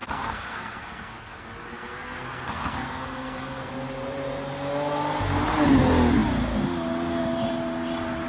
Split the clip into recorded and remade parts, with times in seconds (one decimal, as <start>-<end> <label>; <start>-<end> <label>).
0.0-3.7 remade; 3.7-8.3 recorded